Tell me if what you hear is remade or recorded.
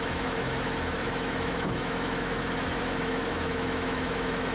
remade